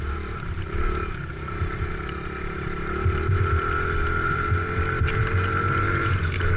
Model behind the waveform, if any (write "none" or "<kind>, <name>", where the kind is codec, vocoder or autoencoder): vocoder, BigVGAN v2